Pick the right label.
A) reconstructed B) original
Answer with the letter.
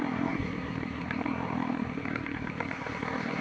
A